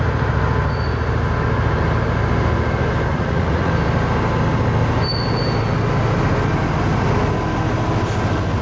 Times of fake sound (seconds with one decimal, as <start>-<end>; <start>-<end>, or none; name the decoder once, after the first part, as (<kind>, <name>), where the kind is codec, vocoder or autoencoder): 3.1-3.7 (vocoder, Vocos)